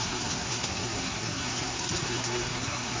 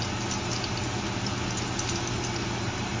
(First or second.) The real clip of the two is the second